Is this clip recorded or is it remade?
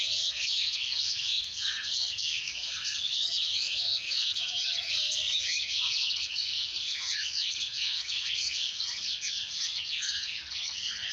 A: remade